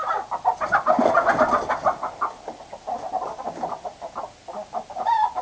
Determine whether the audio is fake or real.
real